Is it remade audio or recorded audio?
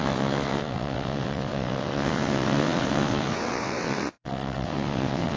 remade